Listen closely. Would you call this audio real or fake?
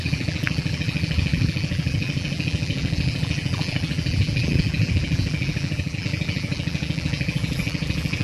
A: fake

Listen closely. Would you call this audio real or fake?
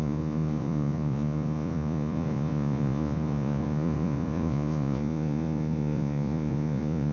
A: fake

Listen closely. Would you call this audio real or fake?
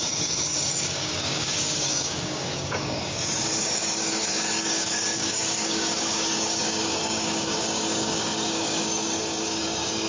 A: fake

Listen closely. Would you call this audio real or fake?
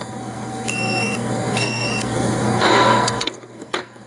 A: fake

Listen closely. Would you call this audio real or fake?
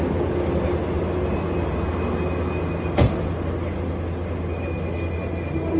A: real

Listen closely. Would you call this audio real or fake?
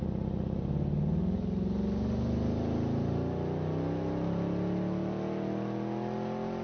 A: real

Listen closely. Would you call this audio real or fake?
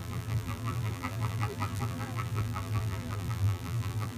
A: fake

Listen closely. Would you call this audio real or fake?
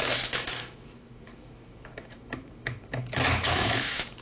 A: fake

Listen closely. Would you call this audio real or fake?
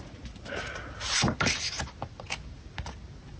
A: real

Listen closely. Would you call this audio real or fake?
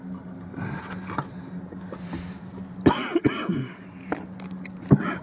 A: real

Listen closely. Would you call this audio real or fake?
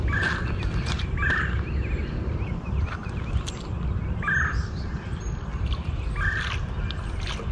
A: real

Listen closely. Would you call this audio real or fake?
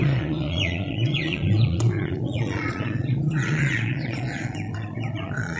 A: fake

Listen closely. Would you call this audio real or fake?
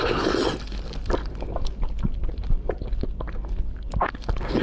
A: real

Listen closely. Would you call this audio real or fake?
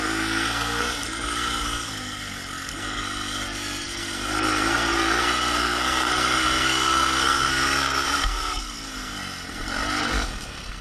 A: fake